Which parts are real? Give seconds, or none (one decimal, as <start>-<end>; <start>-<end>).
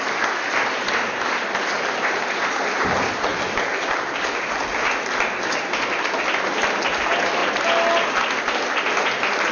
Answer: 0.0-9.5